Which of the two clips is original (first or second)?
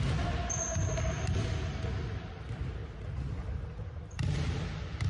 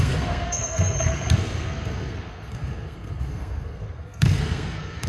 first